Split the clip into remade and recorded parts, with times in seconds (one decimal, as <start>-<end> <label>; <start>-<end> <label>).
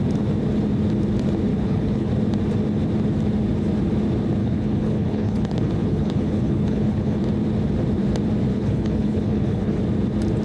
0.0-1.5 recorded; 1.5-2.1 remade; 2.1-4.4 recorded; 4.4-7.2 remade; 7.2-8.5 recorded; 8.5-9.8 remade; 9.8-10.4 recorded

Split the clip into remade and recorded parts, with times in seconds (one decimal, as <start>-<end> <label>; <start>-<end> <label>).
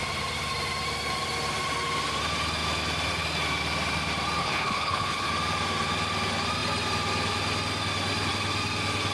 0.0-4.4 recorded; 4.4-5.3 remade; 5.3-9.1 recorded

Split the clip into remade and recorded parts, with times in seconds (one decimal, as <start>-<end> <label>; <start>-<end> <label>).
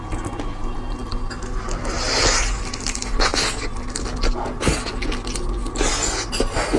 0.0-6.8 recorded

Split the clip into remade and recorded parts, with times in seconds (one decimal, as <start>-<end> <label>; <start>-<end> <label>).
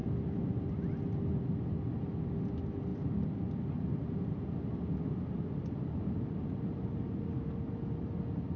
0.0-8.6 recorded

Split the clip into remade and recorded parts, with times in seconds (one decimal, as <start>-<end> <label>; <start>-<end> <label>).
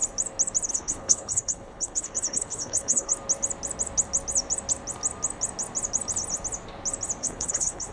0.0-0.7 recorded; 0.7-3.1 remade; 3.1-7.2 recorded; 7.2-7.9 remade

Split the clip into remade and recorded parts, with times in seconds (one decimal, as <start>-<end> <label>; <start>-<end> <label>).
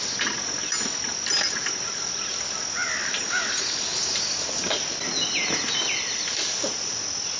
0.0-7.4 recorded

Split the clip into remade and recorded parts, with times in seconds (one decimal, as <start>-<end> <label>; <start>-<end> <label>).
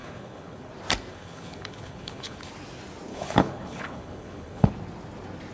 0.0-0.7 remade; 0.7-1.1 recorded; 1.1-2.5 remade; 2.5-3.1 recorded; 3.1-4.7 remade; 4.7-5.5 recorded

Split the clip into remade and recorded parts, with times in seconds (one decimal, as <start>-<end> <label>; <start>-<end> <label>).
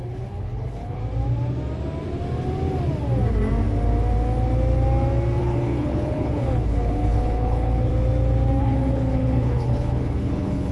0.0-1.0 remade; 1.0-5.4 recorded; 5.4-7.9 remade; 7.9-8.6 recorded; 8.6-10.7 remade